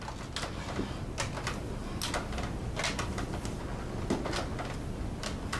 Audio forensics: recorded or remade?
recorded